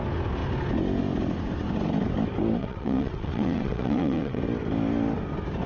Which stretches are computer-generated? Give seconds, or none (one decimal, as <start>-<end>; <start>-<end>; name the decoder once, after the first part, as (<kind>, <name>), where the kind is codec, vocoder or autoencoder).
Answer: 2.6-4.4 (vocoder, WaveNeXt)